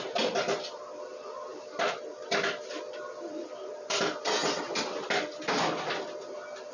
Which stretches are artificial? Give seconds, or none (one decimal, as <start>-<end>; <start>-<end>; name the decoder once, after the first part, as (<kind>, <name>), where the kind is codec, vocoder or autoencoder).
1.5-5.5 (vocoder, BigVGAN v2)